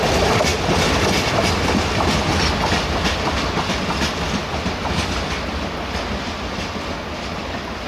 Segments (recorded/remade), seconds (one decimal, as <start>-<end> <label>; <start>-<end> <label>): 0.0-7.9 recorded